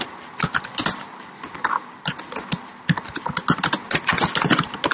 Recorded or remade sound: recorded